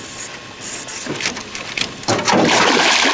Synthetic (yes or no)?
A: no